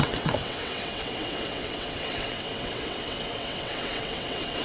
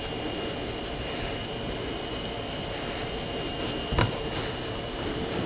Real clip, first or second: second